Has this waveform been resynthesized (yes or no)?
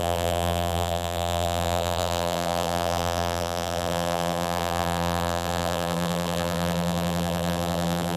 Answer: yes